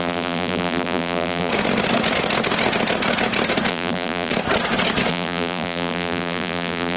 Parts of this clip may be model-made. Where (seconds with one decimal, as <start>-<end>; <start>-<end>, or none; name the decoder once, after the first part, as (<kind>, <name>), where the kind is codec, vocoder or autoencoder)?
0.0-1.5 (vocoder, BigVGAN v2); 3.7-4.3; 5.1-7.0